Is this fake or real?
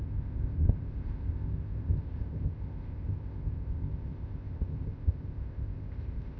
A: fake